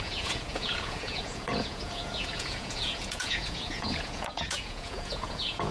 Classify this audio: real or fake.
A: fake